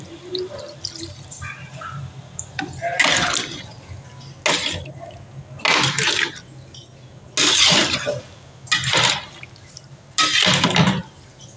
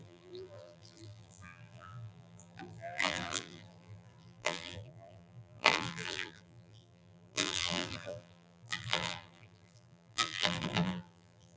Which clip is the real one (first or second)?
first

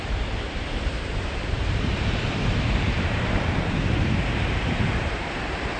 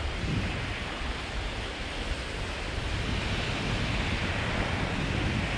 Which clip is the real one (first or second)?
second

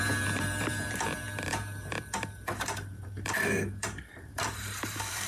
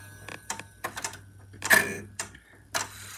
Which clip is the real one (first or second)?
second